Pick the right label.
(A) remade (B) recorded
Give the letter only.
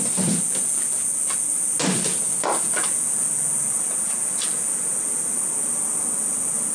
B